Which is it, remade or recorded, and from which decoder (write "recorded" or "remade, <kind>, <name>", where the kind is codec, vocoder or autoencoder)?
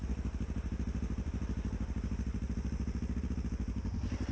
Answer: recorded